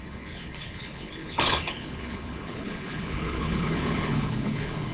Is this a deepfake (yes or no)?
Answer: yes